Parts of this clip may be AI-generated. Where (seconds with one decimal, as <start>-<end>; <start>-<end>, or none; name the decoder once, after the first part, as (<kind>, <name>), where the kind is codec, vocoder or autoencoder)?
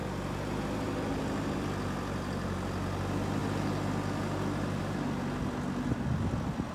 none